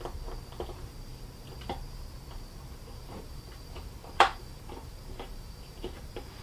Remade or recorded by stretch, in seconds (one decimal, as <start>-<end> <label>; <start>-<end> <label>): 0.0-3.0 recorded; 3.0-6.4 remade